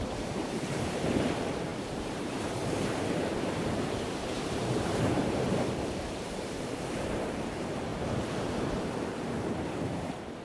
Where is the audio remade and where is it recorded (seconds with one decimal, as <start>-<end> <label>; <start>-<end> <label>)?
0.0-7.9 remade; 7.9-8.7 recorded; 8.7-10.4 remade